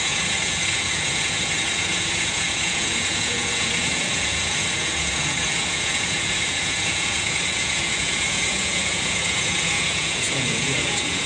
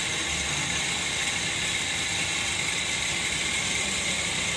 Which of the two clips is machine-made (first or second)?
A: first